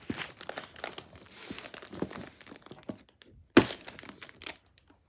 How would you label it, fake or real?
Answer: real